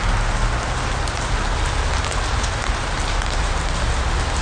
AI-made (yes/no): no